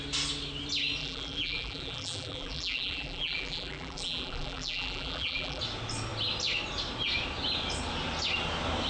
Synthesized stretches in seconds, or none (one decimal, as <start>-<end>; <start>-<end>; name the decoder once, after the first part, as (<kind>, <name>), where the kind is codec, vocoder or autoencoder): 1.0-5.6 (vocoder, BigVGAN v2)